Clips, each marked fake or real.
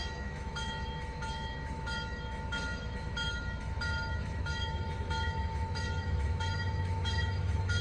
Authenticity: fake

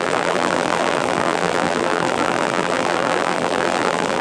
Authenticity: fake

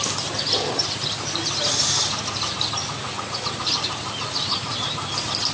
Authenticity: real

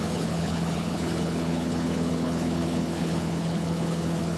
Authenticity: fake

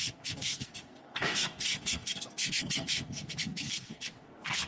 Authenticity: fake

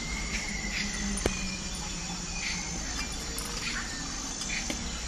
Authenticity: real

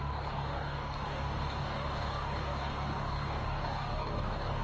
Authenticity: fake